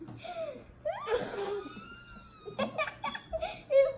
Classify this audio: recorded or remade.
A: recorded